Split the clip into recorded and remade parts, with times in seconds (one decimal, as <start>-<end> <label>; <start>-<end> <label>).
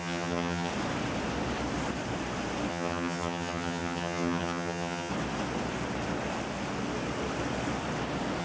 0.0-0.7 remade; 0.7-2.7 recorded; 2.7-5.1 remade; 5.1-8.4 recorded